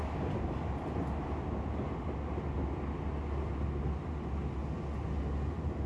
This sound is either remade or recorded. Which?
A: recorded